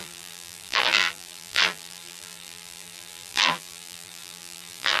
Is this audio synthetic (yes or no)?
yes